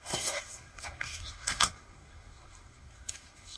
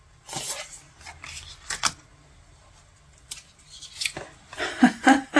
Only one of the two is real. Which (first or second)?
second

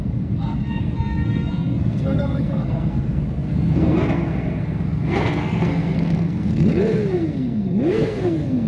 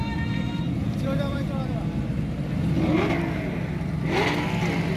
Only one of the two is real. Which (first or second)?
second